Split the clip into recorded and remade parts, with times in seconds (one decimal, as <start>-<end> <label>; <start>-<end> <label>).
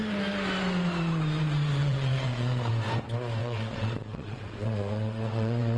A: 0.0-1.8 recorded; 1.8-2.7 remade; 2.7-3.4 recorded; 3.4-5.8 remade